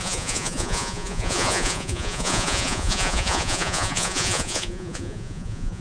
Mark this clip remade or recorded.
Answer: remade